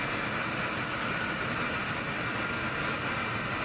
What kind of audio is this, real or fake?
real